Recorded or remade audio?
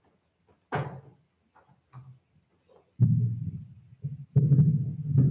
recorded